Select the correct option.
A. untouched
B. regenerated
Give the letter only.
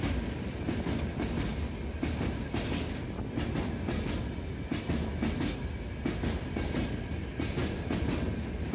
A